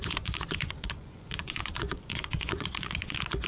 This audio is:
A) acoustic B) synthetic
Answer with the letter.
B